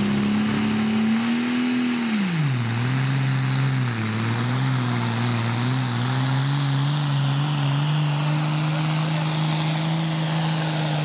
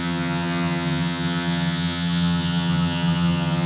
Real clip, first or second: first